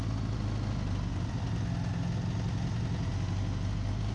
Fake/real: real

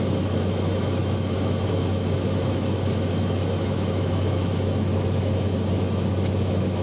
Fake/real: fake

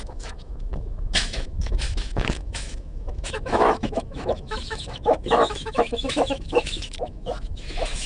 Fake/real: fake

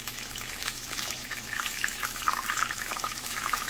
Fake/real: fake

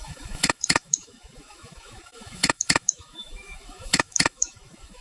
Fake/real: fake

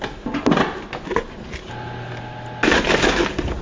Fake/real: real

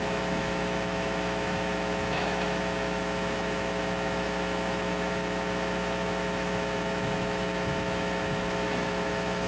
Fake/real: fake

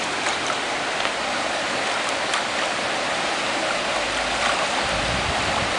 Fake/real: real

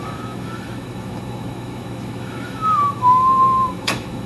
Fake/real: fake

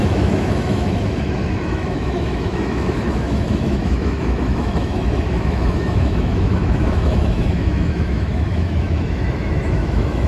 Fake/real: fake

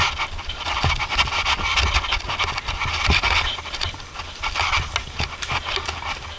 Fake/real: real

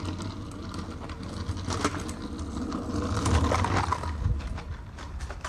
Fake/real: real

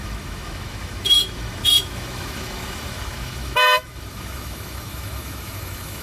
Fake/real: fake